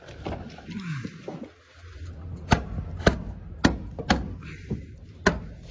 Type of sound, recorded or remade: recorded